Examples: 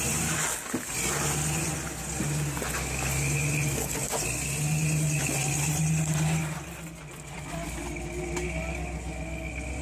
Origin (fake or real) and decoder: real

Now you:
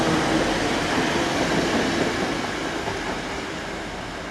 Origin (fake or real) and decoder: real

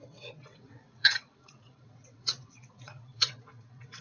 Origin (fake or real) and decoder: fake, vocoder, WaveNeXt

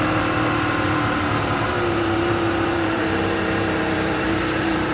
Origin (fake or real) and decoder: fake, vocoder, BigVGAN v2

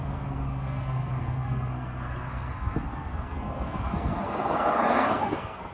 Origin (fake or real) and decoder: fake, codec, SNAC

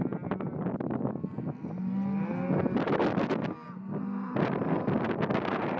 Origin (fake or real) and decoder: real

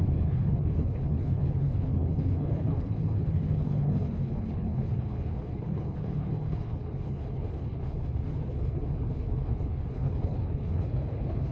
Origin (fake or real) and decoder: fake, codec, HILCodec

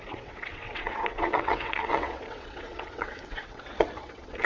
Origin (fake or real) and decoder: fake, vocoder, WaveNeXt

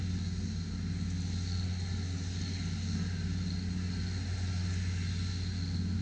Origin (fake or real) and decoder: real